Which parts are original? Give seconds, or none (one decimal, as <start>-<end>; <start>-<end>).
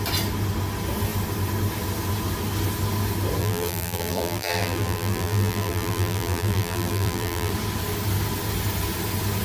0.0-3.4; 7.5-9.4